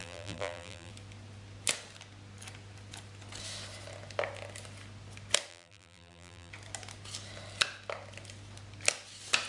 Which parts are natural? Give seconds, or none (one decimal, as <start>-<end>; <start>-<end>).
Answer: 0.9-5.5; 6.5-9.5

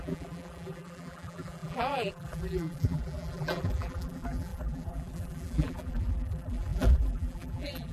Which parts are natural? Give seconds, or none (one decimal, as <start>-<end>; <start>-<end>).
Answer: none

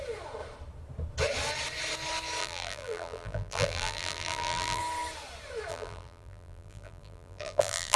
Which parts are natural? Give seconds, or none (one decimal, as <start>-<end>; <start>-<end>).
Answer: 0.0-2.4; 4.8-5.7

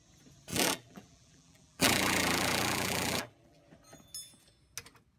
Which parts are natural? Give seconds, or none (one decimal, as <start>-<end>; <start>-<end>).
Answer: 0.0-0.5; 3.6-5.2

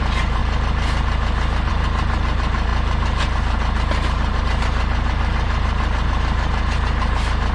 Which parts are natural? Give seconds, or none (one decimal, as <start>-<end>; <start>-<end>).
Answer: 0.4-1.7